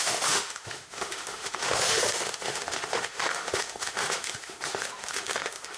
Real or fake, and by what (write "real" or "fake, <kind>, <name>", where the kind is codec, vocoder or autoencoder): fake, autoencoder, DAC-VAE